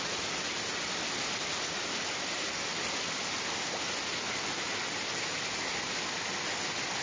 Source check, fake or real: real